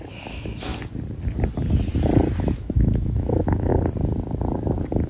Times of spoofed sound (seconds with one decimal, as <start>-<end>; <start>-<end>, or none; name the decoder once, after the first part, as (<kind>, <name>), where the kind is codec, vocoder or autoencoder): 0.0-0.7 (autoencoder, DAC-VAE); 2.5-3.7